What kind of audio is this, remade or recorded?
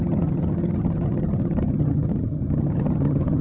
remade